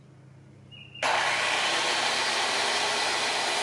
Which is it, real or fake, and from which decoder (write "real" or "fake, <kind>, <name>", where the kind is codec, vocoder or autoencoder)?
real